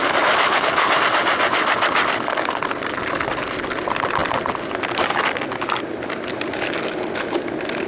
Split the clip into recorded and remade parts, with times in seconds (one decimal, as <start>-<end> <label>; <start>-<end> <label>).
0.0-0.4 recorded; 0.4-0.9 remade; 0.9-7.9 recorded